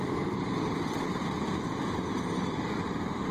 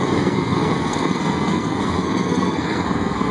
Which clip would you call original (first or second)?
first